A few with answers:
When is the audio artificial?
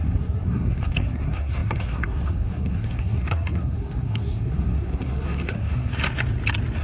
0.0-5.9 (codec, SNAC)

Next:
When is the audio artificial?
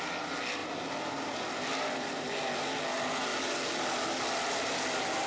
none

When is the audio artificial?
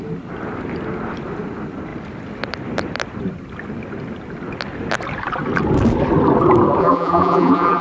6.8-7.8 (vocoder, BigVGAN v2)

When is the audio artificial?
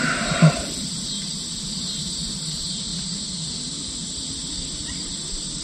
0.0-2.9 (vocoder, BigVGAN v2); 4.7-5.6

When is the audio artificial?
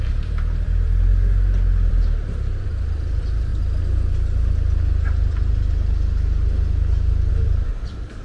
0.0-1.1 (vocoder, BigVGAN v2); 1.9-3.5; 7.3-8.2